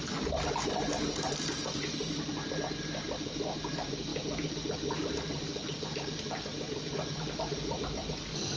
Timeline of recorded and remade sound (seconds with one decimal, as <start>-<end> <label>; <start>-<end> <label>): 0.0-8.6 recorded